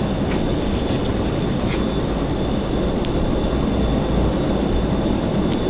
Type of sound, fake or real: real